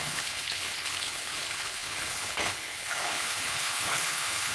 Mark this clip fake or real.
fake